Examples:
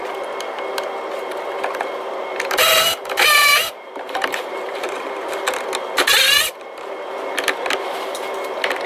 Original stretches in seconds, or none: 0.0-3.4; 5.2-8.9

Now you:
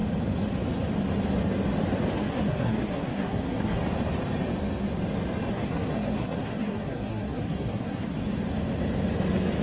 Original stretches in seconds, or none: 0.0-2.2; 3.8-5.5; 8.2-9.6

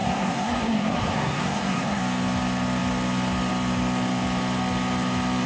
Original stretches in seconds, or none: 2.0-5.5

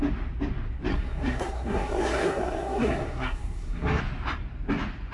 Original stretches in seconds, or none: 0.0-0.9; 4.0-5.1